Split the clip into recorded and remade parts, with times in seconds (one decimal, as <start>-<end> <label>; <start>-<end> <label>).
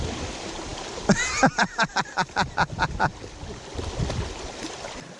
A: 0.0-3.1 remade; 3.1-4.3 recorded; 4.3-5.2 remade